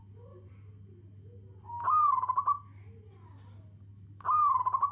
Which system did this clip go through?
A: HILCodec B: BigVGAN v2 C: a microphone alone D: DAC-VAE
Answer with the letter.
C